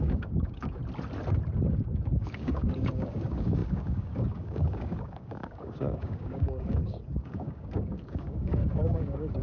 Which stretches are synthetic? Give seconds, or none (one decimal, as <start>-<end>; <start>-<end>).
0.0-0.8; 1.7-9.4